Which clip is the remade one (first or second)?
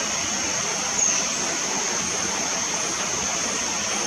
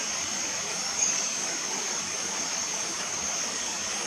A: second